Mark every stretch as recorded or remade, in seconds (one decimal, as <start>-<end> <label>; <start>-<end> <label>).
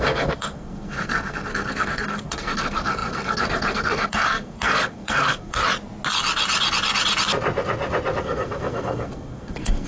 0.0-5.6 remade; 5.6-8.2 recorded; 8.2-9.9 remade